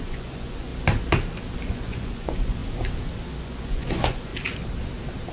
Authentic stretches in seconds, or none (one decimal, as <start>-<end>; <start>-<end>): 0.7-1.7; 2.6-3.4; 4.3-5.3